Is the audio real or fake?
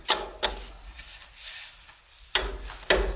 real